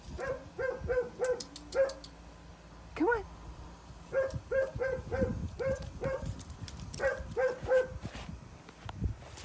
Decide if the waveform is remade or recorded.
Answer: recorded